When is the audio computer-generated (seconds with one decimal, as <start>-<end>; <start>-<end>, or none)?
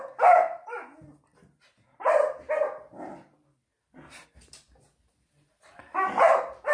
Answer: none